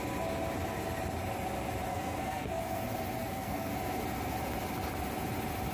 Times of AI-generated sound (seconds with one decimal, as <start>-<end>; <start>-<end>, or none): 1.9-2.8; 3.2-3.7